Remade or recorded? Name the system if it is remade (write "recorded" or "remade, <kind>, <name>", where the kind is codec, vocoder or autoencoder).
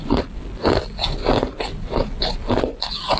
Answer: recorded